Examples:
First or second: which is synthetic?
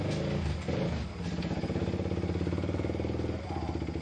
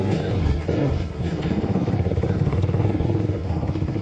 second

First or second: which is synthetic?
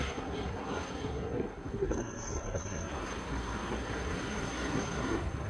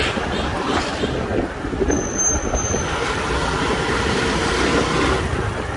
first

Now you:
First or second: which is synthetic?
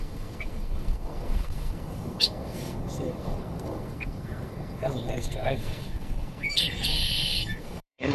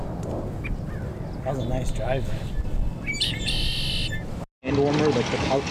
first